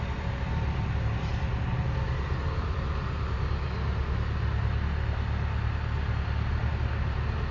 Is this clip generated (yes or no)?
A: no